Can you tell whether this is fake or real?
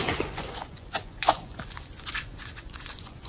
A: fake